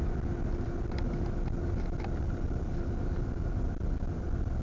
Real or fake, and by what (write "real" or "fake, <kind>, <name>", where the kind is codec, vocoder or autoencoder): real